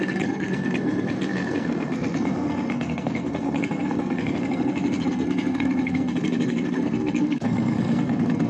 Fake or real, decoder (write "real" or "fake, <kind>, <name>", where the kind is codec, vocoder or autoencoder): fake, codec, SNAC